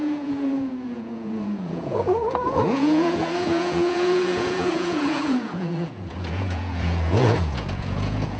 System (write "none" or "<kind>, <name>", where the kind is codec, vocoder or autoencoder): vocoder, Vocos